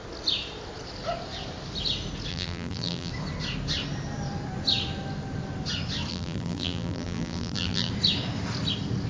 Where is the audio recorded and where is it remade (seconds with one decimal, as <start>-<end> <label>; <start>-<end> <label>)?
0.0-2.3 recorded; 2.3-3.1 remade; 3.1-6.1 recorded; 6.1-7.9 remade; 7.9-9.1 recorded